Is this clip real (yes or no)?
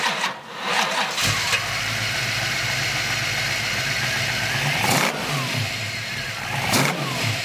yes